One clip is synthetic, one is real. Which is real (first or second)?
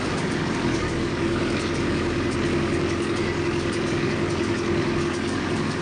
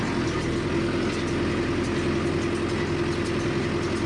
second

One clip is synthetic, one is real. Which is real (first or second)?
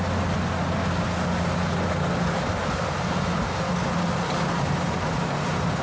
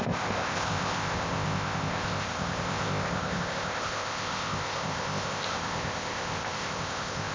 first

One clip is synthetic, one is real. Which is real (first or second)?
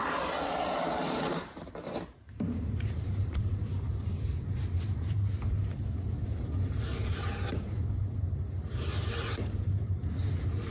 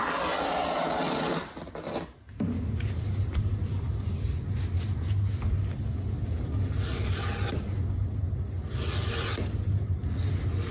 second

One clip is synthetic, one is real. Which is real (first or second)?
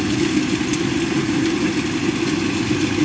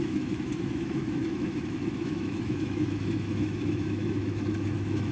first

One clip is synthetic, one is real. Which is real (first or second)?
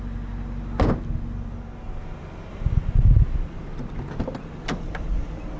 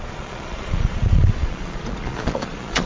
first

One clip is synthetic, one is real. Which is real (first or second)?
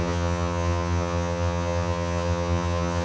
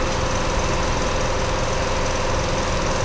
second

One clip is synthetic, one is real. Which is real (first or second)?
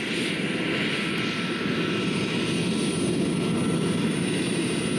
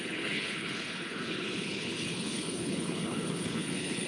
first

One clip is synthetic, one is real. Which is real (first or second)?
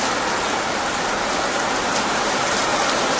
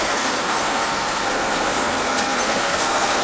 first